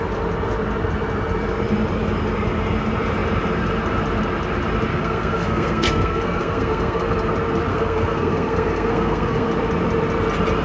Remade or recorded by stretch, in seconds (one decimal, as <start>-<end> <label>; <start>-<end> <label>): 0.0-4.9 recorded; 4.9-7.3 remade; 7.3-7.7 recorded; 7.7-9.5 remade; 9.5-10.6 recorded

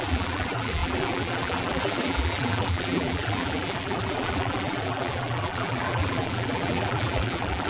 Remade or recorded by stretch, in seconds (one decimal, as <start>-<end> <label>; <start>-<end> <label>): 0.0-7.7 remade

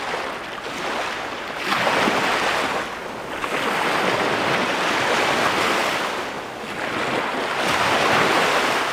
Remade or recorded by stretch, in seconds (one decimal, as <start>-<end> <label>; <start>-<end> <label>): 0.0-8.9 recorded

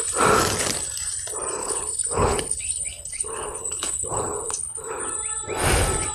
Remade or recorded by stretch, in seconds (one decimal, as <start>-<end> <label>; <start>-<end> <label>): 0.0-1.6 recorded; 1.6-5.0 remade; 5.0-6.1 recorded

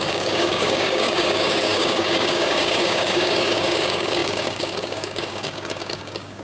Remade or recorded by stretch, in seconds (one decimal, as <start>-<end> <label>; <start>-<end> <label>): 0.0-6.4 remade